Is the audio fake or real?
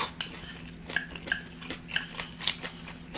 real